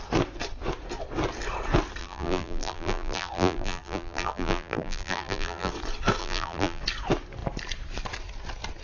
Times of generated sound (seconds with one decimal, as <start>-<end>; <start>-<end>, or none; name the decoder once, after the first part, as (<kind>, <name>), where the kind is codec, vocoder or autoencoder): 2.0-5.7 (vocoder, BigVGAN v2); 6.2-6.8